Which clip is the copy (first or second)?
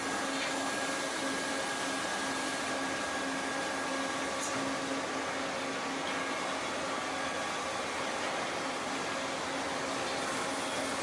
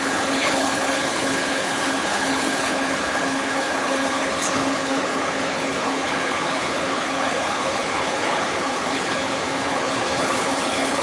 second